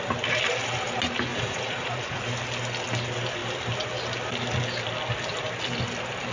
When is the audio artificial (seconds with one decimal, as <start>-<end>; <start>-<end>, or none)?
1.3-2.2